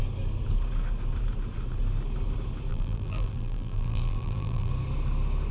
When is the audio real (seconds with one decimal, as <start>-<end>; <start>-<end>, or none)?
0.0-2.7; 4.7-5.5